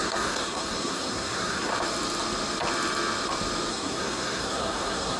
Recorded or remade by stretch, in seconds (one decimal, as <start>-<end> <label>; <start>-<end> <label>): 0.0-1.7 remade; 1.7-3.7 recorded; 3.7-5.2 remade